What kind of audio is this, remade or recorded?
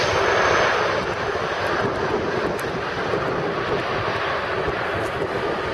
recorded